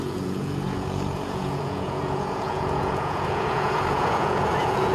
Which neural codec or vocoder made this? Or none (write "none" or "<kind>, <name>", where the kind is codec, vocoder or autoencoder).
vocoder, Vocos